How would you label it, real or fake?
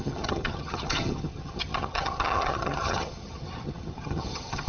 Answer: fake